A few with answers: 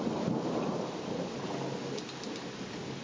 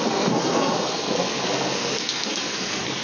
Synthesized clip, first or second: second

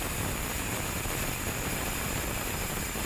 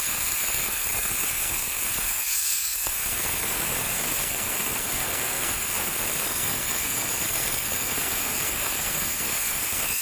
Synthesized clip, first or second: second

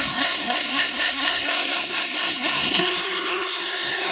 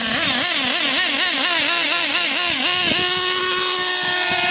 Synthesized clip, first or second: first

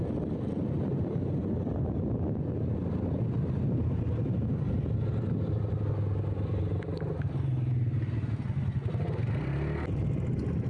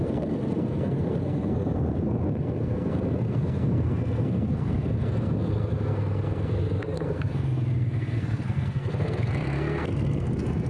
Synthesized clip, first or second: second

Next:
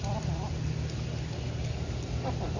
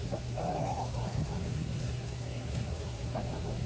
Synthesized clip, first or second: second